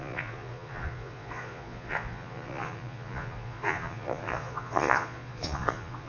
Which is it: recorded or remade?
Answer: remade